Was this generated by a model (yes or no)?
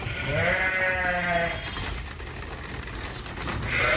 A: no